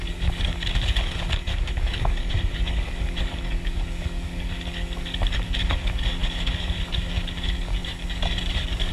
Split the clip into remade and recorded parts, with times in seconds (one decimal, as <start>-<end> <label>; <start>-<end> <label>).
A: 0.0-8.9 remade